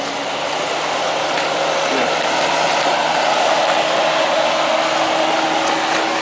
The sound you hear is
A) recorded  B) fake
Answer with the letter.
A